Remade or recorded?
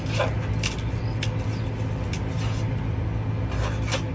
recorded